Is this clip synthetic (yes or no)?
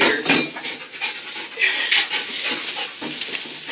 no